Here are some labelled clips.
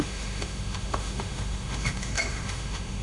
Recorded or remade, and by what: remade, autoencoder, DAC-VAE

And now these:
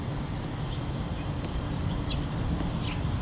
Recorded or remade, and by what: recorded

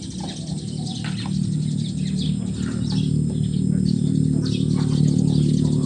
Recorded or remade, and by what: recorded